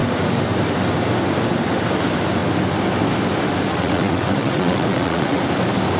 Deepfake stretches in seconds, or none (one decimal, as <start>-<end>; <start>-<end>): 3.7-5.4